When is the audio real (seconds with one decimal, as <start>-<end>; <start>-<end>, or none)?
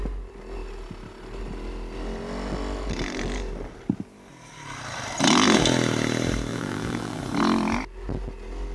0.0-6.5; 7.2-8.7